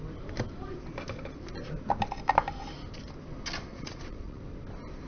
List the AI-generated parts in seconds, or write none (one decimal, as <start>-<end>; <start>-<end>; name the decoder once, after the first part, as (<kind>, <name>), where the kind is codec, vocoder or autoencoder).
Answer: 3.7-4.4 (vocoder, Vocos)